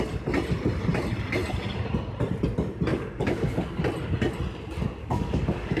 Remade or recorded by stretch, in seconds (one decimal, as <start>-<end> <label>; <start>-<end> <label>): 0.0-2.9 recorded; 2.9-3.8 remade; 3.8-5.0 recorded; 5.0-5.8 remade

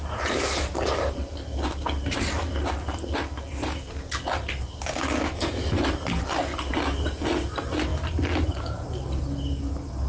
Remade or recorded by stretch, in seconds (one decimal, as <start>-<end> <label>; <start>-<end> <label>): 0.0-10.1 recorded

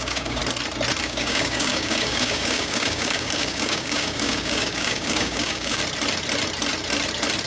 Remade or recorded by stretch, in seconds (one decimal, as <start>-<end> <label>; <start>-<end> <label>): 0.0-0.4 remade; 0.4-1.0 recorded; 1.0-5.8 remade; 5.8-7.5 recorded

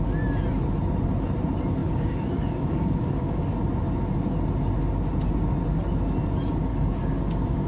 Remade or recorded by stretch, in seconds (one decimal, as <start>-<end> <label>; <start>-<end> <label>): 0.0-1.8 recorded; 1.8-3.4 remade; 3.4-6.7 recorded; 6.7-7.7 remade

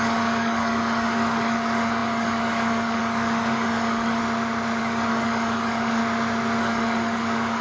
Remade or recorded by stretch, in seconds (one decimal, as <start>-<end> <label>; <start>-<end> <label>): 0.0-4.2 remade; 4.2-4.8 recorded; 4.8-6.0 remade; 6.0-6.6 recorded; 6.6-7.6 remade

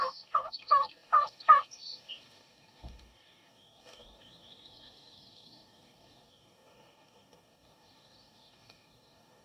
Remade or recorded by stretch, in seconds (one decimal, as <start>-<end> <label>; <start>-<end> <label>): 0.0-9.4 remade

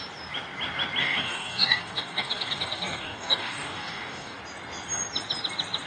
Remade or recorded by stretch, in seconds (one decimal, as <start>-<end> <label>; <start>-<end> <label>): 0.0-1.0 recorded; 1.0-4.4 remade; 4.4-5.9 recorded

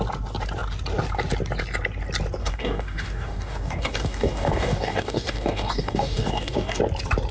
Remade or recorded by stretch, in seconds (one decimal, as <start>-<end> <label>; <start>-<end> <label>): 0.0-2.4 recorded; 2.4-6.8 remade; 6.8-7.3 recorded